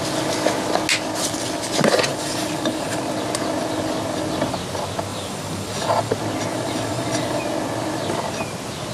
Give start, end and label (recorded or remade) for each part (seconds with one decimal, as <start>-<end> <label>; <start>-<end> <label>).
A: 0.0-2.1 recorded; 2.1-3.0 remade; 3.0-5.1 recorded; 5.1-6.1 remade; 6.1-6.5 recorded; 6.5-7.4 remade; 7.4-8.9 recorded